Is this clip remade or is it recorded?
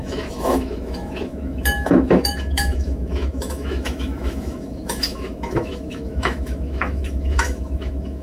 remade